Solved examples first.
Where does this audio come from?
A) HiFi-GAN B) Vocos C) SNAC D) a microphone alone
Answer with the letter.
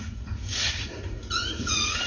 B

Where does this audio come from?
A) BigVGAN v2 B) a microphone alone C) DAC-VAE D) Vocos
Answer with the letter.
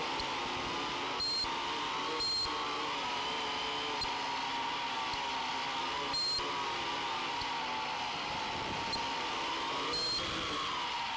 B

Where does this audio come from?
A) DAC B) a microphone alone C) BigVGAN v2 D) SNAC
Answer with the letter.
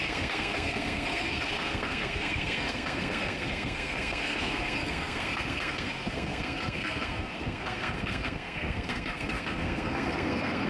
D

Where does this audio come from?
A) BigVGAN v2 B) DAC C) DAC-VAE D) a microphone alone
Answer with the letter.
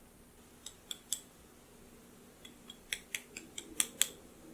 D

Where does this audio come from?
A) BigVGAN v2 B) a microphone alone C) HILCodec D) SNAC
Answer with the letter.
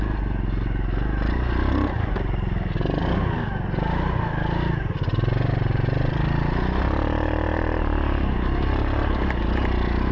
B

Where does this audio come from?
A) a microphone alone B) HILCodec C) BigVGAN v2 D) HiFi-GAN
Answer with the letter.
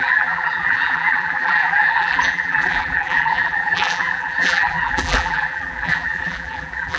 C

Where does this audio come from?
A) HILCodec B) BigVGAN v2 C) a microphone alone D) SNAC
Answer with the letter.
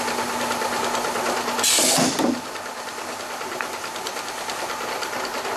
C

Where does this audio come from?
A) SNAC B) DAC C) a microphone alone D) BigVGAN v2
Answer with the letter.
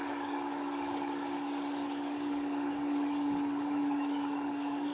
B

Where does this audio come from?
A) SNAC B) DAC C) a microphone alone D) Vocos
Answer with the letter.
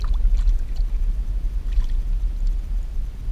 C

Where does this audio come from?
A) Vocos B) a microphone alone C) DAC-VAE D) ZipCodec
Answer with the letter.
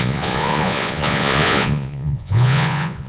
A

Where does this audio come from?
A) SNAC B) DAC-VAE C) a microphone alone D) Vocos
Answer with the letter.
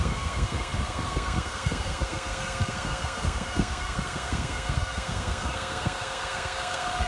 A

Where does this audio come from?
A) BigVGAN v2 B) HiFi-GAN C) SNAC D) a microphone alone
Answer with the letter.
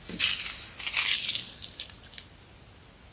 D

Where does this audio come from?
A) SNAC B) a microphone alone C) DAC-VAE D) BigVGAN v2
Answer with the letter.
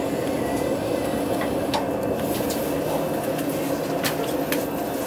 B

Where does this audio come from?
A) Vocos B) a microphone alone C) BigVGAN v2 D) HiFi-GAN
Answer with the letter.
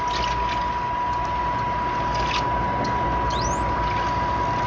B